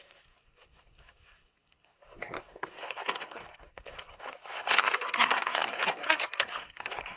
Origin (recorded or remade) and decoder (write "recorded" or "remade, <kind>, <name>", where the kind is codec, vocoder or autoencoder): remade, codec, SNAC